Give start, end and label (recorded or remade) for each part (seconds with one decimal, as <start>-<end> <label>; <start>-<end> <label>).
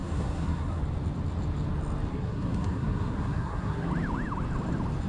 0.0-0.8 remade; 0.8-2.1 recorded; 2.1-3.9 remade; 3.9-5.1 recorded